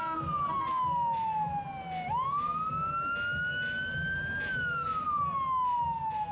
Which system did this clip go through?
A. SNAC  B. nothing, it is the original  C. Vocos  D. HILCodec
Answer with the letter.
B